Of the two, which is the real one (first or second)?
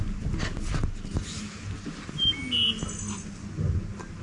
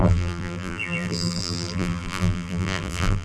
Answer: first